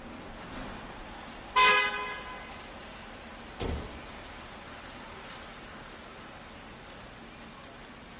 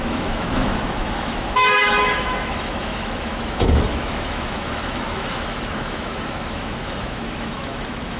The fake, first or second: second